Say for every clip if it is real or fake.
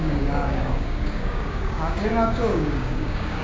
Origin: fake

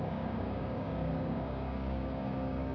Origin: fake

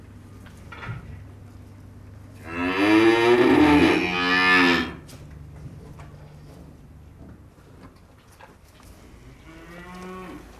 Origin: real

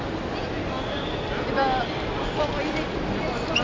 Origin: real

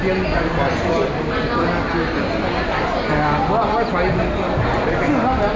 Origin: real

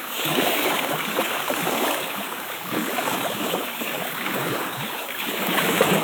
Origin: fake